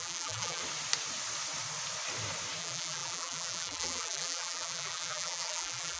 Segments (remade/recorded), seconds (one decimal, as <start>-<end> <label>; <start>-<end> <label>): 0.0-0.6 remade; 0.6-2.6 recorded; 2.6-6.0 remade